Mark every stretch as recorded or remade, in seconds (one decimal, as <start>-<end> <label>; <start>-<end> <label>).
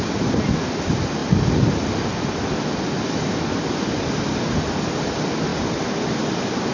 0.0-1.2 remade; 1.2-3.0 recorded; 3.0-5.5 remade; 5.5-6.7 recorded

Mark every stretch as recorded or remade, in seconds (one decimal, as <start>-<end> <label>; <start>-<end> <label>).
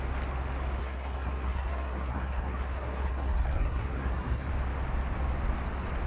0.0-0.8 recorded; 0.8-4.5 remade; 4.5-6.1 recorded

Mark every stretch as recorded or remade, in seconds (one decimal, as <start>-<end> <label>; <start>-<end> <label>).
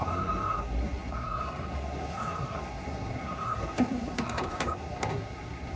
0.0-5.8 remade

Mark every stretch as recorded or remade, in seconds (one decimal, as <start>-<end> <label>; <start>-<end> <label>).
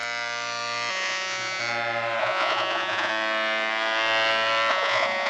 0.0-0.9 recorded; 0.9-1.6 remade; 1.6-2.2 recorded; 2.2-3.1 remade; 3.1-4.7 recorded; 4.7-5.3 remade